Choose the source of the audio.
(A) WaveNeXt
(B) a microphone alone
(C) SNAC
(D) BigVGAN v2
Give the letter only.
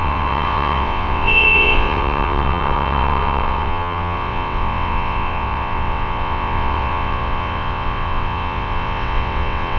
A